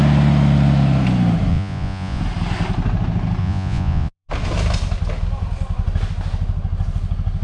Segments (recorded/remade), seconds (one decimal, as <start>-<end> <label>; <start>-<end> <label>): 0.0-1.5 recorded; 1.5-2.2 remade; 2.2-3.4 recorded; 3.4-4.3 remade; 4.3-7.4 recorded